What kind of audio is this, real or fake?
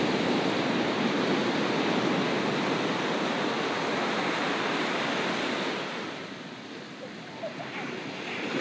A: real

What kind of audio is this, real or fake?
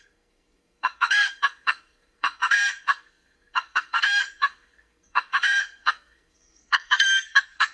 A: fake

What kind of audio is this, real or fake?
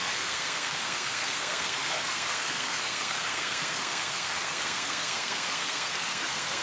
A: fake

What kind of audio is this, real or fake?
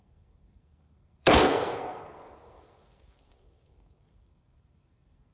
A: fake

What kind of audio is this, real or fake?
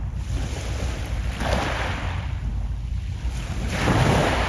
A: real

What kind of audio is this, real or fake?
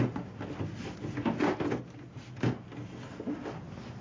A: real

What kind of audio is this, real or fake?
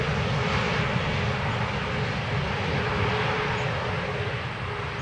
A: real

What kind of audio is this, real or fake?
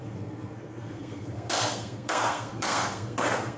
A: fake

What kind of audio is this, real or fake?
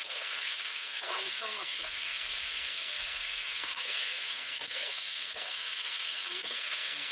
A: fake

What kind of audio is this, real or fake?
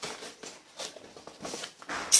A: real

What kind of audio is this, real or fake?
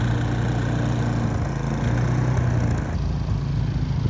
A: real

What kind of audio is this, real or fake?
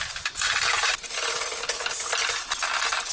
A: real